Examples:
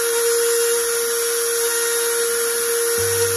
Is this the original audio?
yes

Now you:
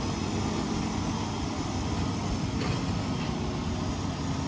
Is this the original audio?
yes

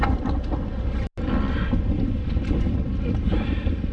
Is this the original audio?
yes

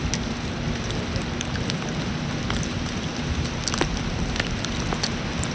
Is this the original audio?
yes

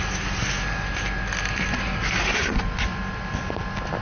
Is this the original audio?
yes